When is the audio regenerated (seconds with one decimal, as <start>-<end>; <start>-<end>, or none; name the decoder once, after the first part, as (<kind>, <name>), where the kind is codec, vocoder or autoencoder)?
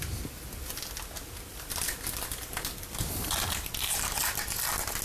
1.5-3.5 (vocoder, BigVGAN v2)